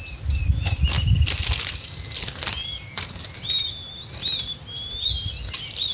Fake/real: real